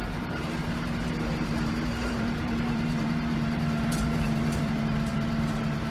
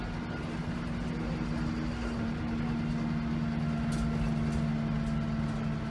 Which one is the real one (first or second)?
second